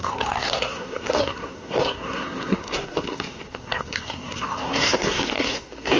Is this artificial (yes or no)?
yes